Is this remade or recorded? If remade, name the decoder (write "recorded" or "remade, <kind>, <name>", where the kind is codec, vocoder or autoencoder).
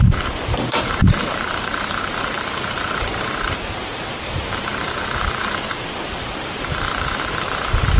remade, vocoder, BigVGAN v2